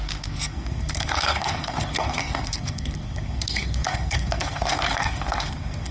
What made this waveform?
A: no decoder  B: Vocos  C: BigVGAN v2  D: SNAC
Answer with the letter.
D